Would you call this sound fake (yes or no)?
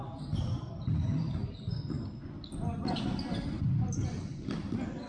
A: no